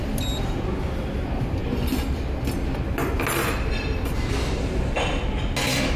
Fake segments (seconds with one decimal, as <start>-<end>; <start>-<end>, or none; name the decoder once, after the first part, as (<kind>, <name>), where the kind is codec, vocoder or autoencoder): none